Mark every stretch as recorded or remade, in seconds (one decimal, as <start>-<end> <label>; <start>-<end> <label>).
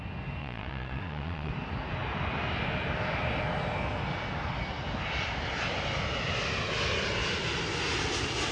0.0-0.4 recorded; 0.4-1.5 remade; 1.5-8.5 recorded